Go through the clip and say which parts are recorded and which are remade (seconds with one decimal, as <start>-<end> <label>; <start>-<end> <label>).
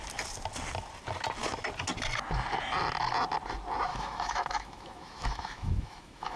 0.0-3.9 recorded; 3.9-6.4 remade